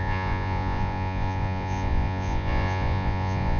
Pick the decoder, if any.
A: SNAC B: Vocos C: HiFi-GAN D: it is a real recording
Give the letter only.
B